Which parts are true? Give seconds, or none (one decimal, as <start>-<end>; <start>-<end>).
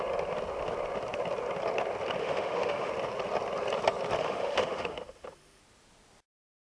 0.0-2.2; 2.9-4.2; 5.6-6.8